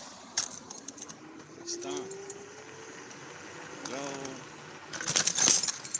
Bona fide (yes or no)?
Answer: yes